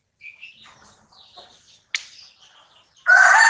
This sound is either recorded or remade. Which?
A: recorded